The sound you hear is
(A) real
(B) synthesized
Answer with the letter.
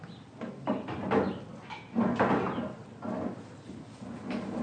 A